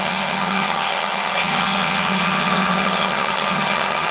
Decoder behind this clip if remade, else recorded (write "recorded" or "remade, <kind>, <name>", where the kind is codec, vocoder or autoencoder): remade, vocoder, HiFi-GAN